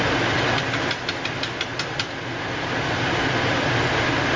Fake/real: real